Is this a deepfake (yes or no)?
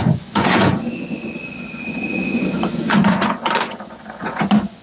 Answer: yes